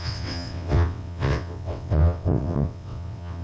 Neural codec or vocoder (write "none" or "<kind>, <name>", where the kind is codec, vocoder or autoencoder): vocoder, WaveNeXt